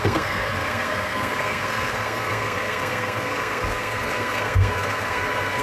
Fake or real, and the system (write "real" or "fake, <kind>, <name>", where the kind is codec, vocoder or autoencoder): fake, codec, SNAC